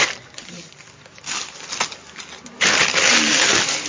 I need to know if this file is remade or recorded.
recorded